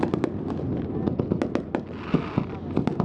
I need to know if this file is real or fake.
real